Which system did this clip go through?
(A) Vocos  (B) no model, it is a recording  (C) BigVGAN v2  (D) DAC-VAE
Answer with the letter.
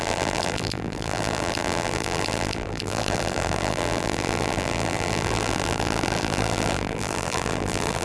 C